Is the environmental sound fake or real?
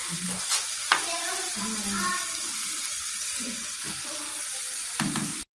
real